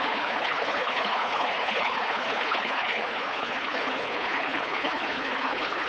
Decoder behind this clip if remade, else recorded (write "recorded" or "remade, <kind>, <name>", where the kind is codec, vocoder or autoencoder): remade, codec, HILCodec